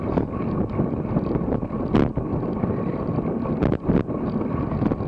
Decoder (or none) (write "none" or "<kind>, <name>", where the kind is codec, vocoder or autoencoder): none